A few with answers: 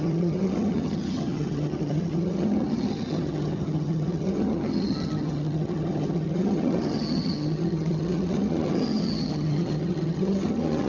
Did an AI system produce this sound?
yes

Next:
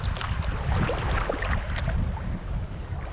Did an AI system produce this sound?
no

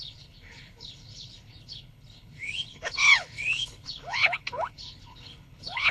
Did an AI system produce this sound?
yes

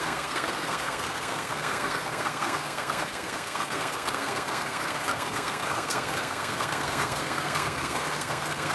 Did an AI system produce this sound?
yes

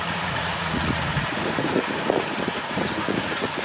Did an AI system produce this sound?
yes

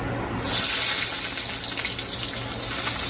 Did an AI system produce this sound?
no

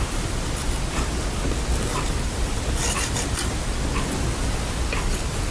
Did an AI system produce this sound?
no